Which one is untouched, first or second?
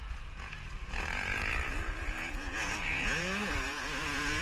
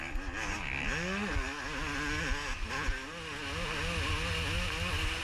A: second